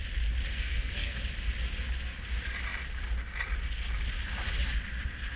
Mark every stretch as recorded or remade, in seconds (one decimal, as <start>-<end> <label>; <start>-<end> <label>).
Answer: 0.0-0.5 recorded; 0.5-1.2 remade; 1.2-5.4 recorded